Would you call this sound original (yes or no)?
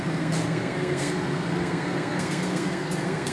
no